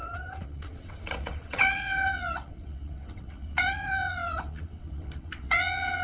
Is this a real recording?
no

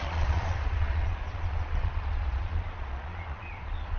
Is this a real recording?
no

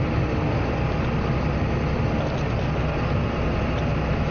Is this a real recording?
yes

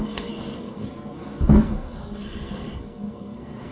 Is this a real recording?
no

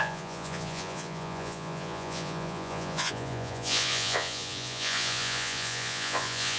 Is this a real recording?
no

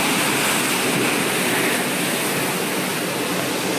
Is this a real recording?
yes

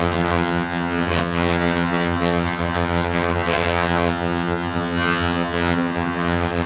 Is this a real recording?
no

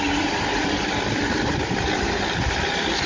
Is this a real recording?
no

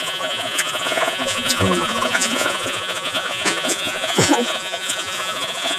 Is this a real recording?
no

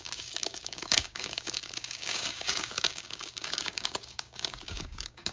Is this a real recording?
no